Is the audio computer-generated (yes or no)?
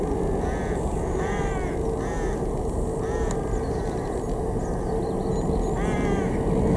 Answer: no